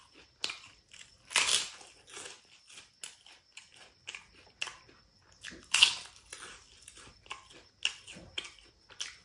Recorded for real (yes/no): yes